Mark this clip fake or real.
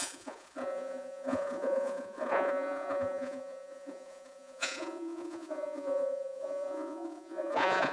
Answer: fake